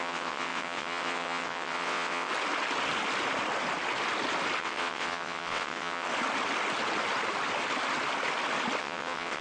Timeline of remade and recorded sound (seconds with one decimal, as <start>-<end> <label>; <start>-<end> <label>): 0.0-2.3 remade; 2.3-4.6 recorded; 4.6-6.1 remade; 6.1-8.8 recorded; 8.8-9.4 remade